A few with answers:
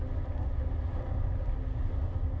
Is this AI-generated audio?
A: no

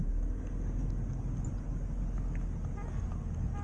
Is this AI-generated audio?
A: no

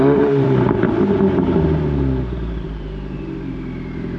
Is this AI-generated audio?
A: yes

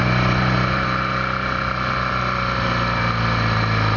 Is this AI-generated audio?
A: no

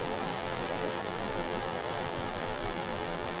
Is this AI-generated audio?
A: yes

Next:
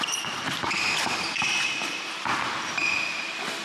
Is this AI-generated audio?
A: yes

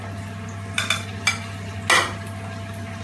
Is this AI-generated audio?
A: no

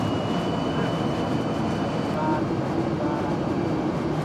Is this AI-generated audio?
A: yes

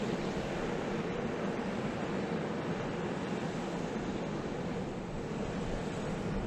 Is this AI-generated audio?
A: no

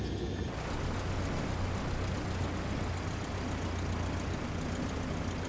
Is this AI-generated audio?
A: no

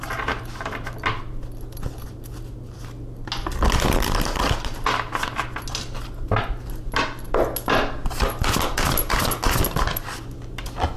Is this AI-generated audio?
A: no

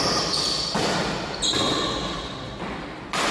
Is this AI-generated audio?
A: no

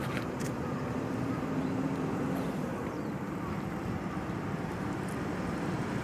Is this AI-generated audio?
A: yes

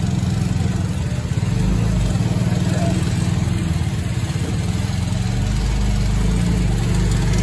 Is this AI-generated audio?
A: no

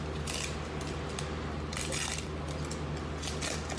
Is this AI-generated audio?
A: no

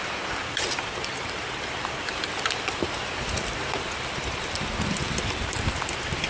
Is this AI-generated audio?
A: yes